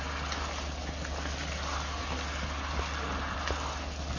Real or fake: real